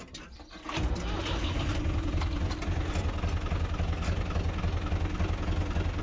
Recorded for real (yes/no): yes